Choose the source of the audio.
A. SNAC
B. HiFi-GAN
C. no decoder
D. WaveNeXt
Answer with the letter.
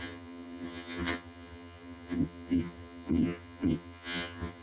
B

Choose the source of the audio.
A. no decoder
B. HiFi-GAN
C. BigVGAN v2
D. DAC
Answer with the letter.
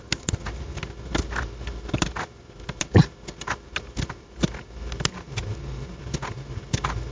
A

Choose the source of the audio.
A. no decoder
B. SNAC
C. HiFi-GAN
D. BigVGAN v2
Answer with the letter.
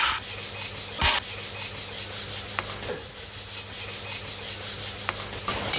A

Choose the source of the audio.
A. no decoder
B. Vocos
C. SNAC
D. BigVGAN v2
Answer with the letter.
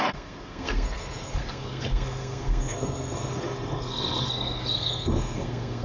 C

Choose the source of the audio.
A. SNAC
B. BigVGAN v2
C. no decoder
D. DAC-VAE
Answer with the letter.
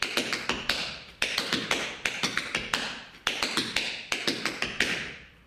C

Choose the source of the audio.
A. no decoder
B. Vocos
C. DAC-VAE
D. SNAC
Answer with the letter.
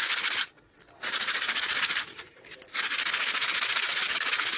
A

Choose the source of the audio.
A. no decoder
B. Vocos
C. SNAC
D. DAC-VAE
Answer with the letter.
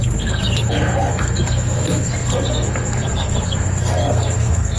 C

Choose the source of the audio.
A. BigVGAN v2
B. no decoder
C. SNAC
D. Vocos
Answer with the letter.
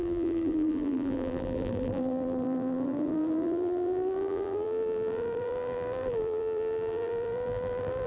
A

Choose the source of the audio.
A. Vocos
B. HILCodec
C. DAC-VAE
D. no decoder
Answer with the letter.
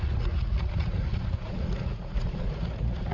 A